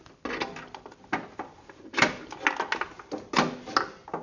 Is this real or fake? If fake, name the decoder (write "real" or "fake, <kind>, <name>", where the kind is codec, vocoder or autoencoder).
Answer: real